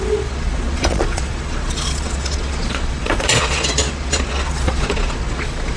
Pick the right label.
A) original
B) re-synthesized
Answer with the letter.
B